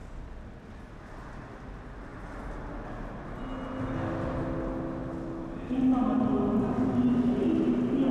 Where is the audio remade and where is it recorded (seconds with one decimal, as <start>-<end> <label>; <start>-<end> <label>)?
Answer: 0.0-8.1 recorded

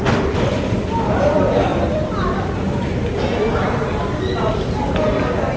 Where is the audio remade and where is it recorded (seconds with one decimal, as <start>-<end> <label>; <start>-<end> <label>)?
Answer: 0.0-5.6 recorded